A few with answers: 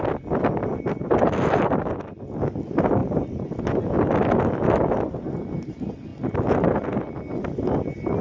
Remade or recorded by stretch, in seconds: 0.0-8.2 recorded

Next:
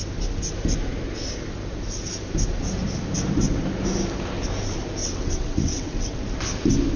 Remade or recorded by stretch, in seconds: 0.0-5.0 recorded; 5.0-6.2 remade; 6.2-7.0 recorded

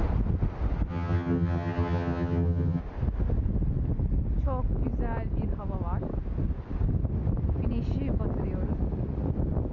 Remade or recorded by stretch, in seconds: 0.0-0.9 recorded; 0.9-2.8 remade; 2.8-9.7 recorded

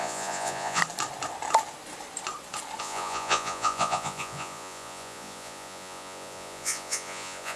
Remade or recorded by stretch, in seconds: 0.0-0.8 remade; 0.8-2.8 recorded; 2.8-7.6 remade